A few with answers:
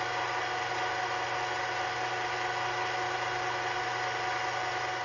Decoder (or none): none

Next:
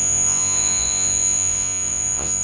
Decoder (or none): vocoder, Vocos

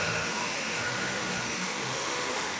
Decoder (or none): autoencoder, DAC-VAE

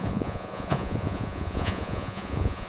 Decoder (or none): vocoder, Vocos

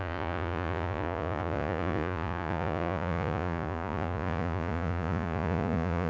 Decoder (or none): vocoder, Vocos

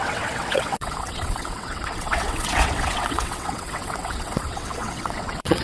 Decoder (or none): vocoder, WaveNeXt